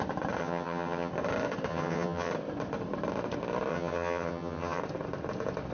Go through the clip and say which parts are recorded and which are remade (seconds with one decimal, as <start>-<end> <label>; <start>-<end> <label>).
0.0-0.4 recorded; 0.4-1.1 remade; 1.1-1.7 recorded; 1.7-2.3 remade; 2.3-3.7 recorded; 3.7-4.8 remade; 4.8-5.7 recorded